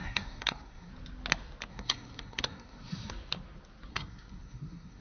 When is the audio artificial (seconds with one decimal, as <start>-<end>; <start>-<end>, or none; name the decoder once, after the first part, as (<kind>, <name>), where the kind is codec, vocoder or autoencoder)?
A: 0.0-0.9 (codec, SNAC); 1.7-3.1; 3.9-5.0